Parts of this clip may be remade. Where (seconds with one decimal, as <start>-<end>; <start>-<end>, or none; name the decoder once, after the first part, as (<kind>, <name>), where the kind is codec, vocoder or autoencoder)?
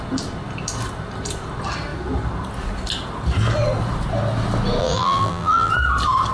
4.8-5.7 (vocoder, BigVGAN v2)